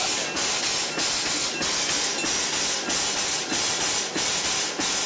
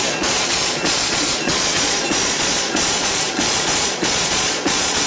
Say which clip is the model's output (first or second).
second